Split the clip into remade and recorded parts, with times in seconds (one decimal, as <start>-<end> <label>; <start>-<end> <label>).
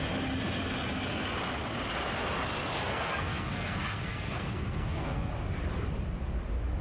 0.0-2.9 recorded; 2.9-5.3 remade; 5.3-6.8 recorded